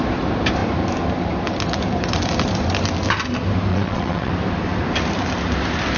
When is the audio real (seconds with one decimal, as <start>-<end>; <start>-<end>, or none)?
0.0-3.7; 4.3-6.0